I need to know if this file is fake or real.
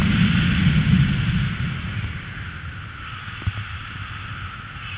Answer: real